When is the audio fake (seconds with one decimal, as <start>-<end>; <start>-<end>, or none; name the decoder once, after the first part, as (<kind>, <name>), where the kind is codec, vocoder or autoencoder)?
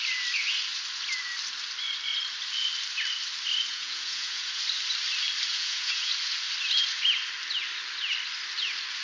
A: 3.7-4.6 (vocoder, Vocos); 5.5-6.1